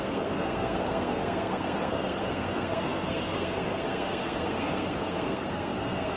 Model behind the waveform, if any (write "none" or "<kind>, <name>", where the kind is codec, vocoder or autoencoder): codec, SNAC